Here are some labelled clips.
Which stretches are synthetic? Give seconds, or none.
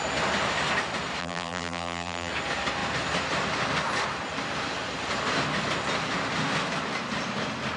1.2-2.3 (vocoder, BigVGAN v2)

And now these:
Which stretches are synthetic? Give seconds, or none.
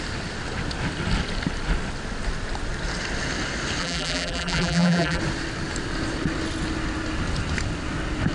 3.8-5.2 (vocoder, BigVGAN v2)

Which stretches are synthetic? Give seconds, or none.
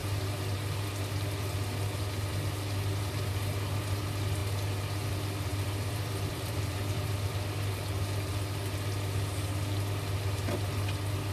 5.5-7.3 (vocoder, BigVGAN v2)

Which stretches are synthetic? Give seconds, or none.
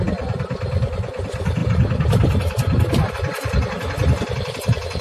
none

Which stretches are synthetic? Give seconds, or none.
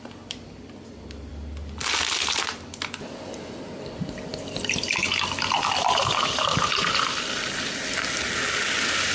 none